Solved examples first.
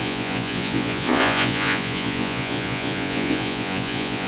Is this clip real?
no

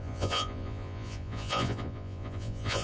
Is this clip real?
no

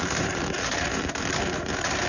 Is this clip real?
no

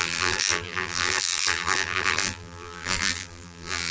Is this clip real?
no